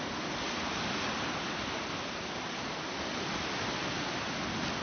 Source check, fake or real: real